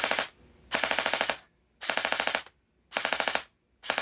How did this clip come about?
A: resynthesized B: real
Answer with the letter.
B